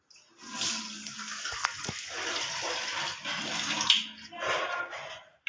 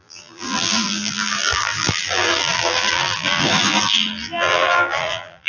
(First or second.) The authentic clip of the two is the first